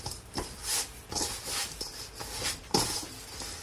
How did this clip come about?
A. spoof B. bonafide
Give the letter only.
B